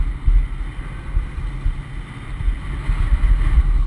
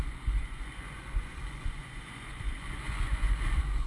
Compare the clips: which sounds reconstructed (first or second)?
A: second